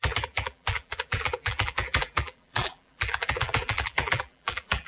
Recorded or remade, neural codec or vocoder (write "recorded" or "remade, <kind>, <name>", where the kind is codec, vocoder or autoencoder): remade, vocoder, BigVGAN v2